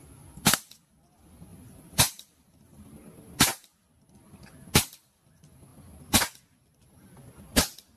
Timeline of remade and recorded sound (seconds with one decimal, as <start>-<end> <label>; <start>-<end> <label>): 0.0-1.5 recorded; 1.5-2.8 remade; 2.8-8.0 recorded